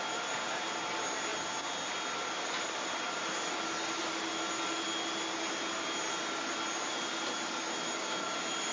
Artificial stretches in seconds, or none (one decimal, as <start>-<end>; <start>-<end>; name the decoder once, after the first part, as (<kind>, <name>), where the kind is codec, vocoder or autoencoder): none